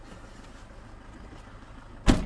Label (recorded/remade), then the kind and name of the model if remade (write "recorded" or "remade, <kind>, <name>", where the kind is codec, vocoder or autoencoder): recorded